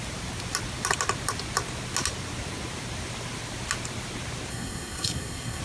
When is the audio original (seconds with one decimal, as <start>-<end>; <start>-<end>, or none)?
0.0-4.5